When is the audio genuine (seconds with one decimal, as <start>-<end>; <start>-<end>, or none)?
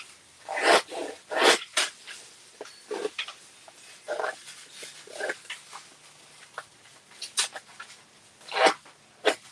0.0-9.5